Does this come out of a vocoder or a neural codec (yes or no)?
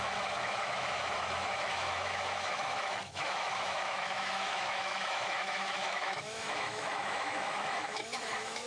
yes